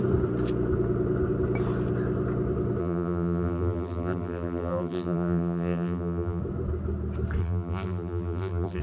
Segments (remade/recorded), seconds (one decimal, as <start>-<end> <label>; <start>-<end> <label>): 0.0-2.8 recorded; 2.8-6.4 remade; 6.4-7.4 recorded; 7.4-8.8 remade